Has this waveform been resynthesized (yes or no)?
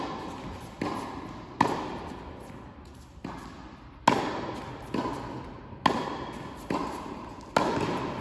no